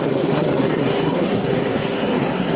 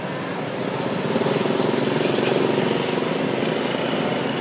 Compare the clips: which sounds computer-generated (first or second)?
first